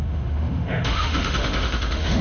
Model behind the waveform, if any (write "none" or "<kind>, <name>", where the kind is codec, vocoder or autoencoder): autoencoder, DAC-VAE